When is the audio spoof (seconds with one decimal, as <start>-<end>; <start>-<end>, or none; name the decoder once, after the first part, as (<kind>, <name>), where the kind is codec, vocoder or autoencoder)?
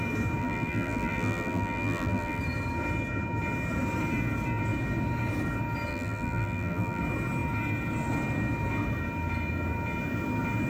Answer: 0.4-2.4 (vocoder, BigVGAN v2); 5.9-7.0